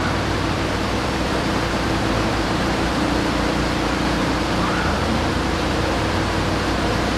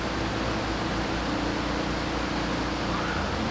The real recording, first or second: second